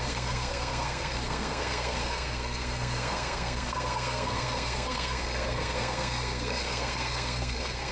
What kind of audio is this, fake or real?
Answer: fake